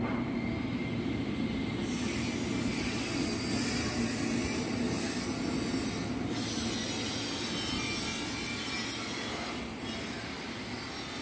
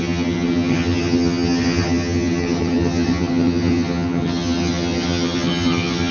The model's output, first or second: second